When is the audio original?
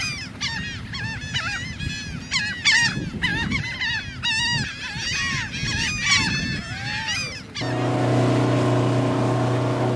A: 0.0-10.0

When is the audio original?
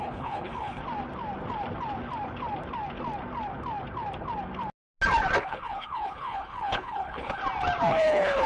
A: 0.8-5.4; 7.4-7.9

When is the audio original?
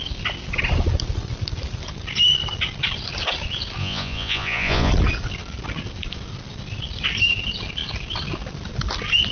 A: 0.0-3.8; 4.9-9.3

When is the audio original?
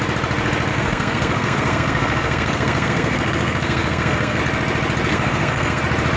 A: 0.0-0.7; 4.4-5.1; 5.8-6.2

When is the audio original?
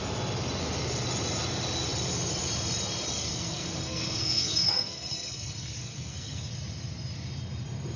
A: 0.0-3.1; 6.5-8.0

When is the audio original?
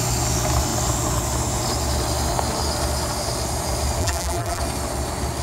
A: 0.0-4.0; 4.6-5.4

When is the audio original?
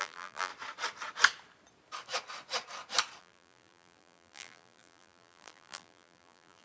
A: 0.5-3.2